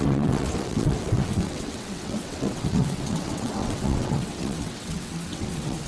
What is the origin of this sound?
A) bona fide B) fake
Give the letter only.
B